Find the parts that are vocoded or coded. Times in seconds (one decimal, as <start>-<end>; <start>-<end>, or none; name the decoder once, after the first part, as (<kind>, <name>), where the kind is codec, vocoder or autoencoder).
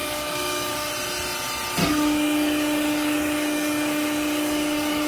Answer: 0.0-0.9 (codec, DAC); 1.8-5.1